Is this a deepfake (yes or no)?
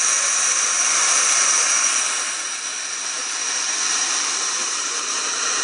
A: yes